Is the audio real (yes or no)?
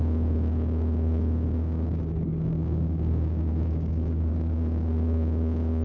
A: no